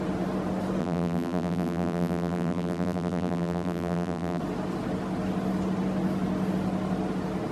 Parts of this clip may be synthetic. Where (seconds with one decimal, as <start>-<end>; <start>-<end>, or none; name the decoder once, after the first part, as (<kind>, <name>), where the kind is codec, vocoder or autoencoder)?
0.8-4.4 (vocoder, BigVGAN v2)